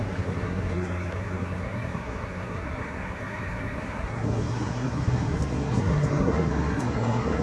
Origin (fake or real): fake